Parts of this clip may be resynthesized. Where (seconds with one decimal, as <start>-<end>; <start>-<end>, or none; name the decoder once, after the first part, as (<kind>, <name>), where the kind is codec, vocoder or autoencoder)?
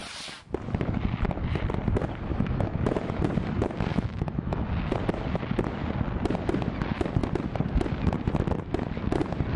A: 2.3-3.2 (autoencoder, DAC-VAE); 3.9-4.7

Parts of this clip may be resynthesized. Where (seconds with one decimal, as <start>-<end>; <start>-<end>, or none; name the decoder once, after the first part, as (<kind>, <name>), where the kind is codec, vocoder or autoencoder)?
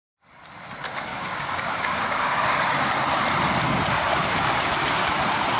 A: 1.1-2.9 (codec, DAC)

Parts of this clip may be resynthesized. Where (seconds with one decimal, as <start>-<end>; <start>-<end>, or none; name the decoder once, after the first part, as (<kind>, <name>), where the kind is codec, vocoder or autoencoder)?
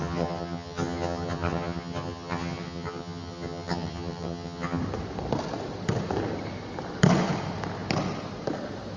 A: 0.0-4.8 (vocoder, HiFi-GAN)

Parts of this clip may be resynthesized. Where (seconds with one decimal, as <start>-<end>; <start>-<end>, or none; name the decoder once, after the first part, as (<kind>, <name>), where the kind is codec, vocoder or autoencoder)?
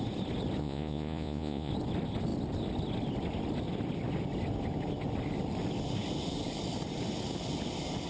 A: 0.6-1.7 (vocoder, Vocos)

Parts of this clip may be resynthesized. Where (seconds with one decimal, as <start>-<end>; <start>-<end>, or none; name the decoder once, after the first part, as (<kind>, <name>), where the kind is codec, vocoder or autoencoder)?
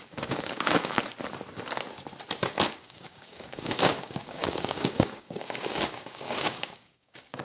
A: 0.0-1.0 (codec, DAC); 2.7-7.4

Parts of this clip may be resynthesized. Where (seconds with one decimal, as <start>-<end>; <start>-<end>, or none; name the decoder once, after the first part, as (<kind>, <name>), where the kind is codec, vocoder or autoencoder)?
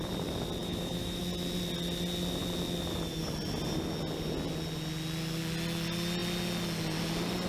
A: 0.6-1.2 (autoencoder, DAC-VAE)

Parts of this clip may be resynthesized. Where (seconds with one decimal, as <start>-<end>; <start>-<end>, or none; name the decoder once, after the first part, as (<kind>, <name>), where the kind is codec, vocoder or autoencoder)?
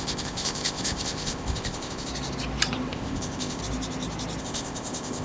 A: 0.0-2.1 (codec, ZipCodec); 2.9-3.6; 4.4-5.2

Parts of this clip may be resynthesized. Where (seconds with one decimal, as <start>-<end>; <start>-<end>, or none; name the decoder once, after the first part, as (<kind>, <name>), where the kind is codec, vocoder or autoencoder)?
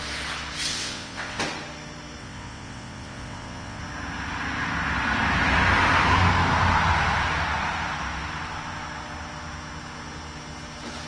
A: 0.7-1.4 (vocoder, WaveNeXt); 2.2-3.8